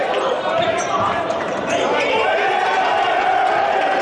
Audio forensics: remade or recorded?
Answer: remade